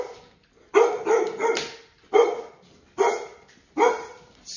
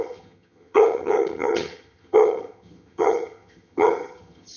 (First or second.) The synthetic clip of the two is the second